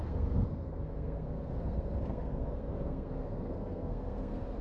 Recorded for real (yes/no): no